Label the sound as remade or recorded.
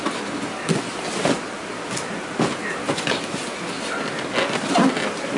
recorded